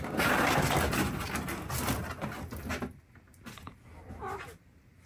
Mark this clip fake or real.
real